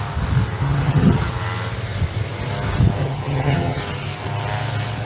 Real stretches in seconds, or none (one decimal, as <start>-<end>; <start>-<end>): 0.0-0.6; 1.3-3.0; 3.8-5.1